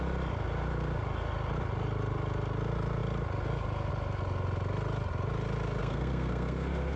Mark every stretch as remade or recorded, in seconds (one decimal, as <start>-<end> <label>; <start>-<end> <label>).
0.0-5.8 recorded; 5.8-7.0 remade